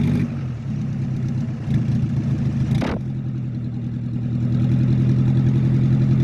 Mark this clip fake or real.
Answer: real